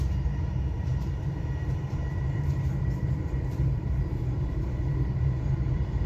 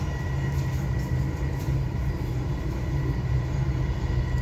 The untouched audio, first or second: second